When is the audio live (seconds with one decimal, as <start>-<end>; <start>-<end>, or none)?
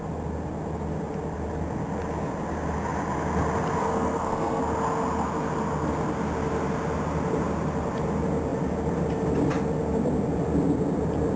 0.0-3.8; 4.6-11.4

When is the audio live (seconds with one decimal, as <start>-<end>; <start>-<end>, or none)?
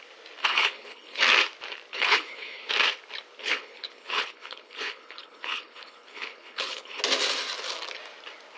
0.0-0.4; 1.2-1.9; 2.7-3.4; 7.0-8.6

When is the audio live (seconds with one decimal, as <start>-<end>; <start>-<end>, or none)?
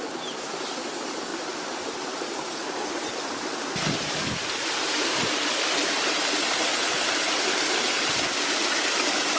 0.0-9.4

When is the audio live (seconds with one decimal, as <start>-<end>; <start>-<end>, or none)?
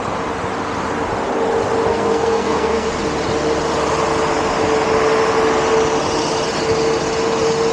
0.0-1.9; 2.9-7.7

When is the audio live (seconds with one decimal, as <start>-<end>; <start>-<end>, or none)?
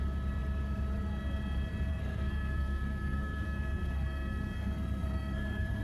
0.0-1.9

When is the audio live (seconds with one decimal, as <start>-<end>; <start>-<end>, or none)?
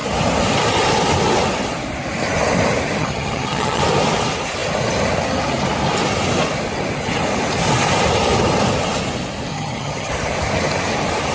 0.0-3.0; 3.8-9.5; 10.1-11.3